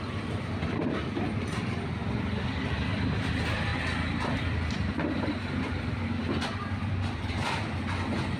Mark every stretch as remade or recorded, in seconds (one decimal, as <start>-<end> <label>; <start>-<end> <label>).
0.0-8.4 recorded